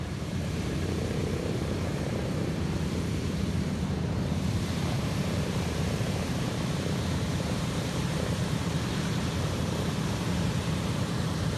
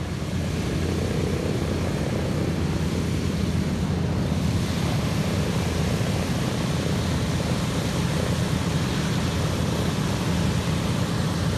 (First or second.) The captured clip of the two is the second